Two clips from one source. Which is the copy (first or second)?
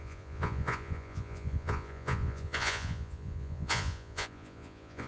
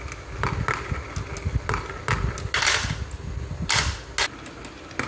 first